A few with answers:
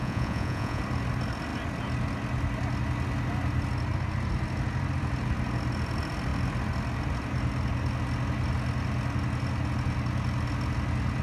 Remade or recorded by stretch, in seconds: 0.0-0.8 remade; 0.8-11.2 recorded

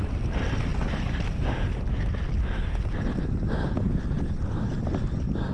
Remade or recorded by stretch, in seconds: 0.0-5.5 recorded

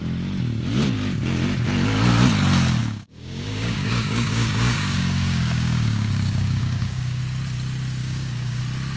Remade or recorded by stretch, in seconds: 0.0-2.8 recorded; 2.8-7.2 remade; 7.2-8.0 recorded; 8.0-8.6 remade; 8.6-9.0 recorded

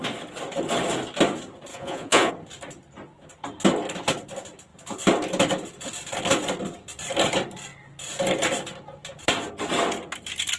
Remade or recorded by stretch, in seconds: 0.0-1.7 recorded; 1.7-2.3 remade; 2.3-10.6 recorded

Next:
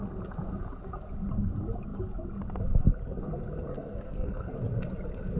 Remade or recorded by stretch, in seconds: 0.0-3.7 recorded; 3.7-4.5 remade; 4.5-5.4 recorded